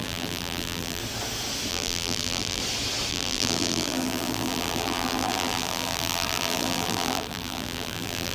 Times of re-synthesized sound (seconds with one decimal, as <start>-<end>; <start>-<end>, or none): 0.0-1.0; 1.7-2.6; 3.1-8.3